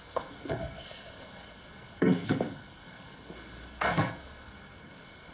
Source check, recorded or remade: remade